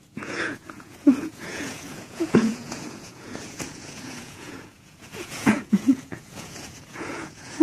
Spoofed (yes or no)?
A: yes